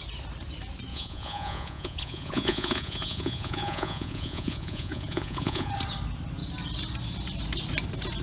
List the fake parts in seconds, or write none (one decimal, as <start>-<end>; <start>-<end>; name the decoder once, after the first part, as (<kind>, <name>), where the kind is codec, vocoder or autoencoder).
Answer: 0.9-5.7 (vocoder, Vocos)